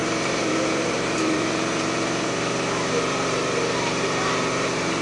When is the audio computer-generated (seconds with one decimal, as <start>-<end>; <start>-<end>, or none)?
0.0-5.0